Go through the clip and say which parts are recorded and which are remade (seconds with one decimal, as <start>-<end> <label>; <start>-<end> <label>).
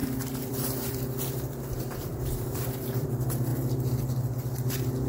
0.0-3.1 remade; 3.1-5.1 recorded